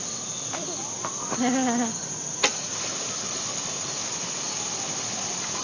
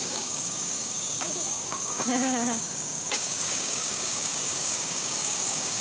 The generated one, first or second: second